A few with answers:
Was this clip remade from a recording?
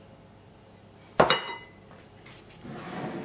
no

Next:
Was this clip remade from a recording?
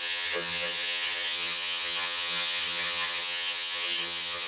yes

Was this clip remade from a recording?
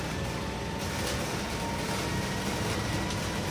no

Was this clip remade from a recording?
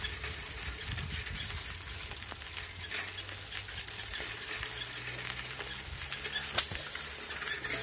no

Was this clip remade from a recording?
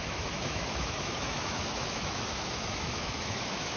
yes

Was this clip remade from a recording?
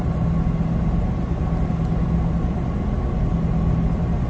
no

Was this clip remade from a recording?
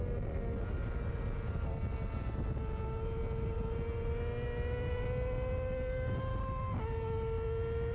no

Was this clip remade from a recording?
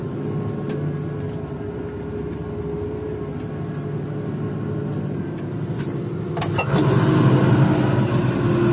no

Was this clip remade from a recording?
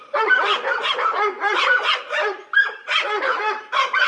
yes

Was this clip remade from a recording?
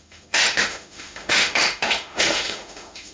yes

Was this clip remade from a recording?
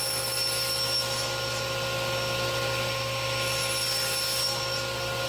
no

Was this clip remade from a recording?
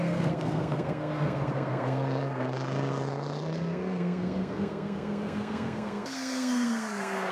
yes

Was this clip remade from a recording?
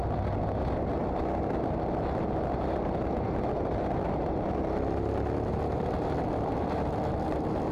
no